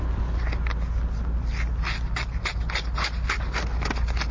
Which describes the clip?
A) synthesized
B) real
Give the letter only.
B